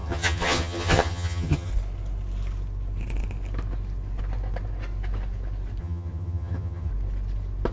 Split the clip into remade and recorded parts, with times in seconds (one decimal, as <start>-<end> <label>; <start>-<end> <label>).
0.0-1.7 remade; 1.7-5.8 recorded; 5.8-6.9 remade; 6.9-7.7 recorded